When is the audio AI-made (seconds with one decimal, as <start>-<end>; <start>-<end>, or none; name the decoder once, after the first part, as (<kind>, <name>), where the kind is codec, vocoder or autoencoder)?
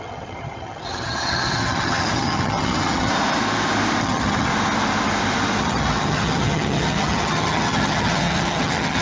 0.0-3.1 (vocoder, HiFi-GAN); 4.0-4.5; 5.6-9.0